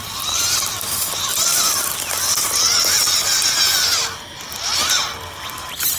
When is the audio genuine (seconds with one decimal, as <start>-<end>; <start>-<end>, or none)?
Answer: 0.0-6.0